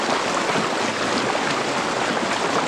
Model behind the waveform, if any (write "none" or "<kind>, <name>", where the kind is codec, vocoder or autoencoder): none